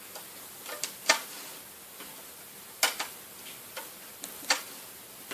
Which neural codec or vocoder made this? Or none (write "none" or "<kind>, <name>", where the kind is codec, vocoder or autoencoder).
none